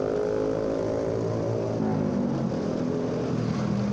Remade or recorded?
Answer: recorded